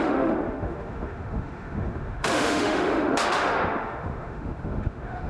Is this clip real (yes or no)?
no